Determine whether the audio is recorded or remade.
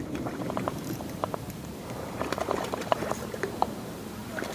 remade